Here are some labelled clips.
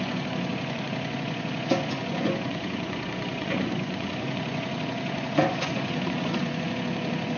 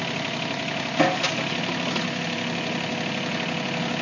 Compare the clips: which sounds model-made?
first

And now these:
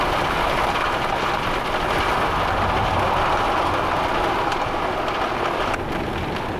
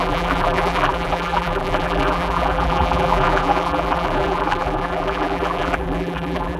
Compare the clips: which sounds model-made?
second